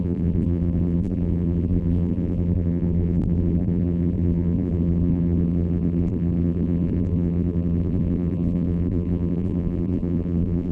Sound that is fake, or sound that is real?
fake